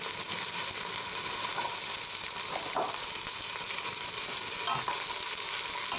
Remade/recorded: recorded